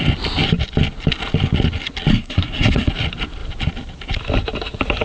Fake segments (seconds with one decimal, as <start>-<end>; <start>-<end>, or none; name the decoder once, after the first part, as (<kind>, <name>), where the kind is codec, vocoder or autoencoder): 2.1-2.9 (codec, SNAC)